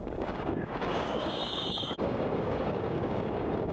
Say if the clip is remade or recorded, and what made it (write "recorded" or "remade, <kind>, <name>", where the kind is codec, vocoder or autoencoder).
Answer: remade, codec, DAC